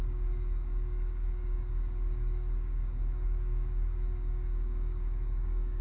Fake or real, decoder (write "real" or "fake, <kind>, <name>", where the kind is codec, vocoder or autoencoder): fake, codec, DAC